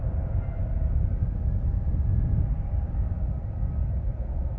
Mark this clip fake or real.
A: real